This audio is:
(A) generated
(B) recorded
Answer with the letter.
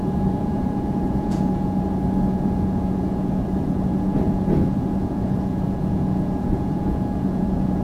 A